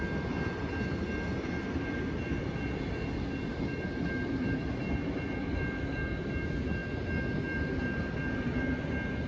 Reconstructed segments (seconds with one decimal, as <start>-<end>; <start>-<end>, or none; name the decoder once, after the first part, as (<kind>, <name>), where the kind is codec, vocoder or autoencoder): none